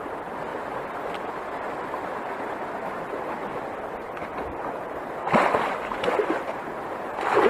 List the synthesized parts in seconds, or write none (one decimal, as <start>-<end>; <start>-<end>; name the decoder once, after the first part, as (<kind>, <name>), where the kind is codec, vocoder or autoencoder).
none

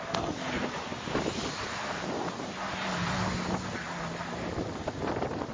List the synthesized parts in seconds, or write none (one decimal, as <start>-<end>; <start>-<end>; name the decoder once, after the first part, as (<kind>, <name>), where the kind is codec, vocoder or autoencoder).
none

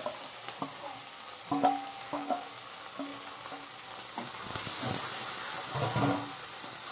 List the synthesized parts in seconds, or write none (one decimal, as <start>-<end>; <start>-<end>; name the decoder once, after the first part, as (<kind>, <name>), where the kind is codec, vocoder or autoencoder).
2.0-2.5 (codec, DAC)

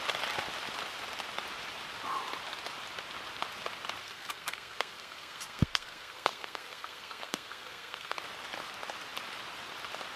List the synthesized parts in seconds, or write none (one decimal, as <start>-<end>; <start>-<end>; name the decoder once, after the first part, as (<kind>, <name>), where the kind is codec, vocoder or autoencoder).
4.0-8.2 (codec, SNAC)

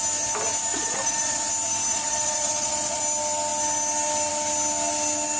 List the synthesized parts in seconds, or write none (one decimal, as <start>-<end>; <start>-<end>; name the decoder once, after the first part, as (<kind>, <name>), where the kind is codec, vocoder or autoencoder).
0.7-1.4 (vocoder, Vocos); 1.9-3.0